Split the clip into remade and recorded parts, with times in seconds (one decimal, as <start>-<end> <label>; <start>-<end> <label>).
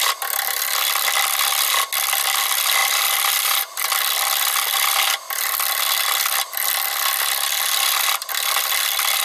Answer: 0.0-9.2 recorded